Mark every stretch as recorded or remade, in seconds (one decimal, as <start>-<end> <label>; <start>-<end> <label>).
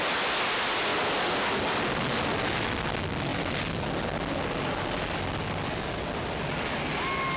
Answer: 0.0-7.4 recorded